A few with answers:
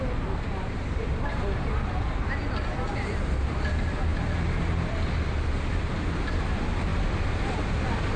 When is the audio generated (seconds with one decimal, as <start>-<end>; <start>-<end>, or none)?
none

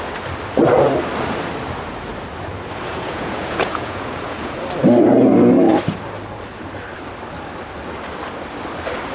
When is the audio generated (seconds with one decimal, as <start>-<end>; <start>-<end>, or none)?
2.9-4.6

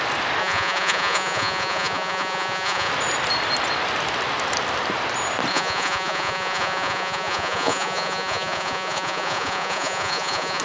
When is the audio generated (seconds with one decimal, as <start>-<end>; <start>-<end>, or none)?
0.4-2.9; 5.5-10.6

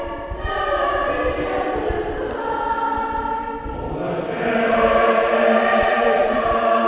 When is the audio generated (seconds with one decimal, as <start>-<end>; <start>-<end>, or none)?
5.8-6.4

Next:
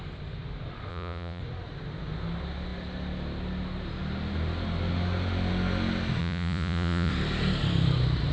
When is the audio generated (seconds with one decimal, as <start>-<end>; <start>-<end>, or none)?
0.9-1.4; 6.2-7.1

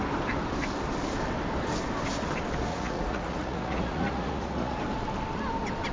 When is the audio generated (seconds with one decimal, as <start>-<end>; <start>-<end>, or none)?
2.7-4.8

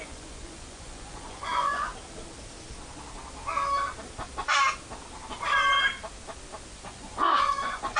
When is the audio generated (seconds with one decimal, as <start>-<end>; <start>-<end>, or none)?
0.0-1.9; 6.7-8.0

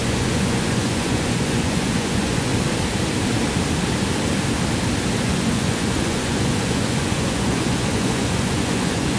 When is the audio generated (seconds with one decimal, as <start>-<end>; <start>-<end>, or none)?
0.0-2.5; 5.2-9.2